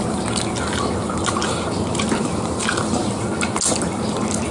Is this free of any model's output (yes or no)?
yes